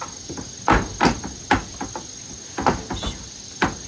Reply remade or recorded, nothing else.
recorded